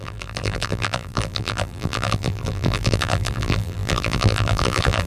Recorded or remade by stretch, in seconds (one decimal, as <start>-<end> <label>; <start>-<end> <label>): 0.0-5.1 remade